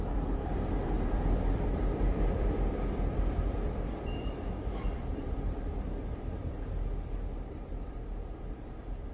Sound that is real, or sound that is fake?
fake